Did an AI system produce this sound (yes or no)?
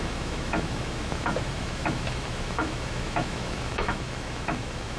yes